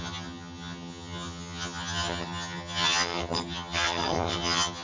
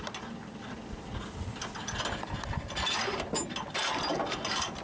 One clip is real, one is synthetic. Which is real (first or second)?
second